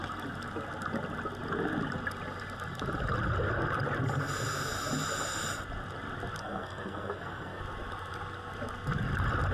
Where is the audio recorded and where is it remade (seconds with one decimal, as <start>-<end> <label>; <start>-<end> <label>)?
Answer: 0.0-6.4 recorded; 6.4-7.6 remade; 7.6-9.5 recorded